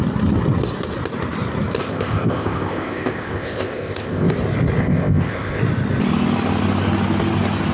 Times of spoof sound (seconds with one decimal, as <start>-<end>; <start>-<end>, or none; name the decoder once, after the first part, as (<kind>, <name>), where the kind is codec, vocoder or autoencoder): 1.8-4.3 (codec, ZipCodec); 4.8-5.6